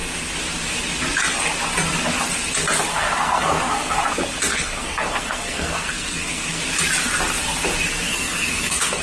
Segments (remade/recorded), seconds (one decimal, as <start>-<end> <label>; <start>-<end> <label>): 0.0-2.9 recorded; 2.9-4.0 remade; 4.0-4.5 recorded; 4.5-6.6 remade; 6.6-8.1 recorded; 8.1-9.0 remade